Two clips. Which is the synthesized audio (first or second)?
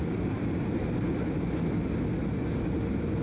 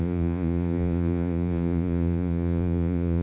second